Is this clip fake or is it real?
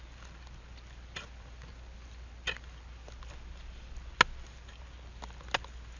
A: real